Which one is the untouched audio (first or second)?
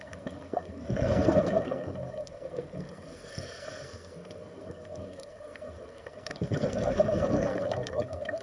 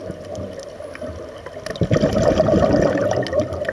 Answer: second